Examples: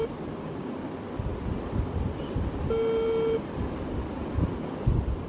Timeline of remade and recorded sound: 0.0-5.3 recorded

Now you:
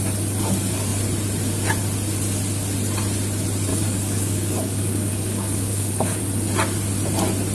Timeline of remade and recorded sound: 0.0-3.7 recorded; 3.7-6.2 remade; 6.2-7.5 recorded

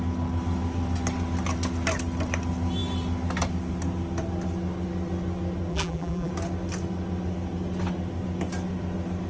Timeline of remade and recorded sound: 0.0-5.7 recorded; 5.7-6.3 remade; 6.3-9.3 recorded